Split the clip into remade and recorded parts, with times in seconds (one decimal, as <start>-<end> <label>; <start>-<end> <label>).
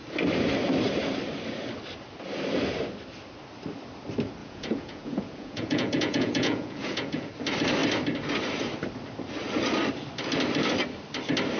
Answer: 0.0-4.4 recorded; 4.4-7.3 remade; 7.3-11.6 recorded